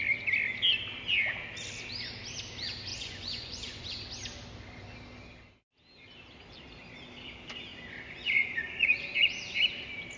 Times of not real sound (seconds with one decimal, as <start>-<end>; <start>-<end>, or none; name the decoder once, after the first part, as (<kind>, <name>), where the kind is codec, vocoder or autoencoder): 2.9-3.9 (vocoder, Vocos); 7.7-9.1

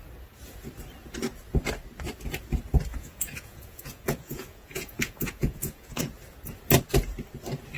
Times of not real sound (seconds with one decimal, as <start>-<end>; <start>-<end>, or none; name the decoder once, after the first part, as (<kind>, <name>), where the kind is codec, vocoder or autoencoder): 2.9-6.0 (vocoder, Vocos)

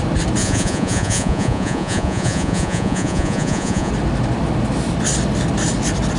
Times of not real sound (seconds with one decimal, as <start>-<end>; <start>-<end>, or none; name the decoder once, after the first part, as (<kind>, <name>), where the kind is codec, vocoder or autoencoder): 0.4-3.9 (vocoder, Vocos)